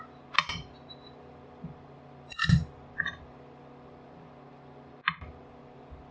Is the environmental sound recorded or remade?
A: recorded